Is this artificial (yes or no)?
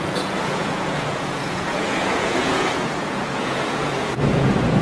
yes